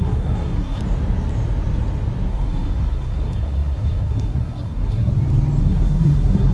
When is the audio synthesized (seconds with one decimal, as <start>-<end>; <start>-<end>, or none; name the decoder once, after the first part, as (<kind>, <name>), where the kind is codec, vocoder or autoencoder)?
0.0-0.8 (codec, SNAC); 2.3-5.1; 5.6-6.5

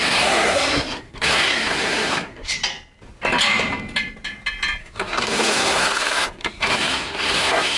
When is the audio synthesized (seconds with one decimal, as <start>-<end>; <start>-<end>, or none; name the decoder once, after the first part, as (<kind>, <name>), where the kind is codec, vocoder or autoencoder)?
0.0-2.6 (codec, SNAC); 4.8-7.8

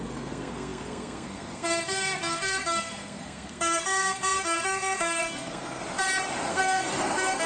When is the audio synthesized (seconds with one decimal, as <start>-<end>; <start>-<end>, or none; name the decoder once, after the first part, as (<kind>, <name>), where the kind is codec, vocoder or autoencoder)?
0.0-5.8 (codec, SNAC); 6.5-7.5

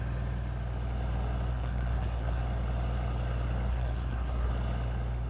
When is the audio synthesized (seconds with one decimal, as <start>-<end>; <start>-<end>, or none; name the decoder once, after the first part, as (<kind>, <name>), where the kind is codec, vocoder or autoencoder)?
1.5-2.4 (codec, SNAC); 3.7-4.5

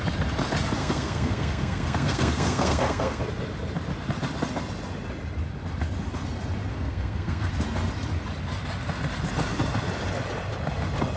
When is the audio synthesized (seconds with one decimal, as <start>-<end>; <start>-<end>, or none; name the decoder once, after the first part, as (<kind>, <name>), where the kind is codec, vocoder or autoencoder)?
0.8-3.2 (codec, SNAC); 6.7-7.5

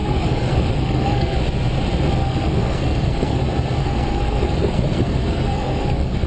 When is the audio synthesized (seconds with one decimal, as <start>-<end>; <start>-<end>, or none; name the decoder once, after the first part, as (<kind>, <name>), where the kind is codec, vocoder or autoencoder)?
0.0-1.4 (codec, SNAC); 2.2-3.4; 3.8-6.3